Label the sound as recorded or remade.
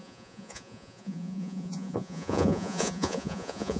remade